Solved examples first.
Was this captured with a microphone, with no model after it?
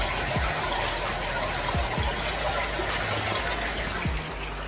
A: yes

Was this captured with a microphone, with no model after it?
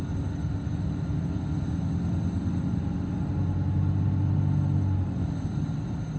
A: yes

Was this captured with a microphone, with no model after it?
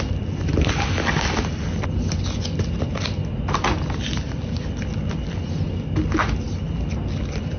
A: yes